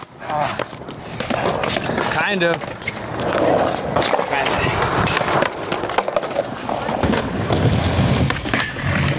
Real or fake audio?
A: real